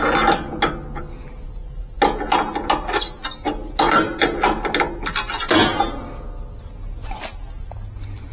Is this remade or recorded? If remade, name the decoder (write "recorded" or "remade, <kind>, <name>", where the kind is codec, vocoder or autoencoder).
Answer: recorded